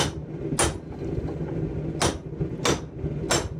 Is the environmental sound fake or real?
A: real